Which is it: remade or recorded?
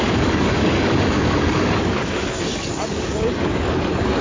remade